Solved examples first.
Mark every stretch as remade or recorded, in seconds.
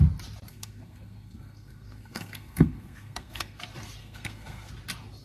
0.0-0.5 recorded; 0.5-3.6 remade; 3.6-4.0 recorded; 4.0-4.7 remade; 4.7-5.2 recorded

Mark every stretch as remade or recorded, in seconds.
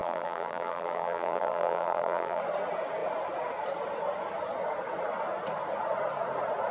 0.0-2.4 remade; 2.4-6.7 recorded